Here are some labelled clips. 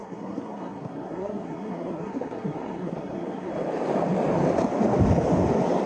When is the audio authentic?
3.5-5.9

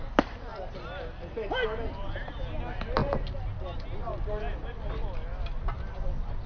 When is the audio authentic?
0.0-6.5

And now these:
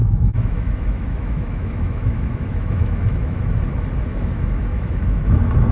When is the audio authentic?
3.4-4.1; 5.2-5.7

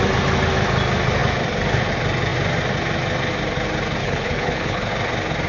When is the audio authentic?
0.0-4.0; 4.9-5.5

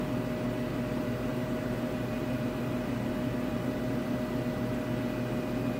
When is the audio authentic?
0.0-0.7; 4.2-5.8

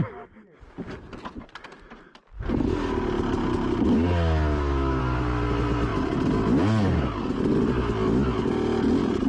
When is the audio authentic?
0.0-4.5; 5.0-9.3

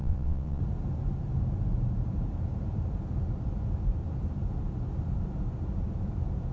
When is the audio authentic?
0.6-6.5

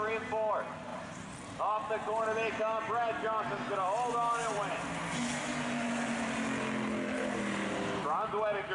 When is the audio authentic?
0.0-0.9; 1.6-4.4; 5.0-8.7